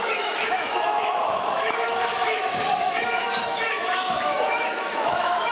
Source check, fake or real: fake